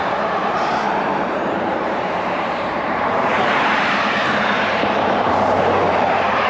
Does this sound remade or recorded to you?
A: remade